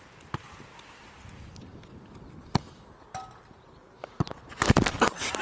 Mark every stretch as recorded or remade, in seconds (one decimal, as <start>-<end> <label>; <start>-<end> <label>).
0.0-5.4 recorded